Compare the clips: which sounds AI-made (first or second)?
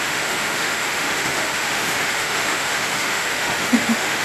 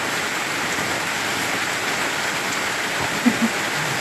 first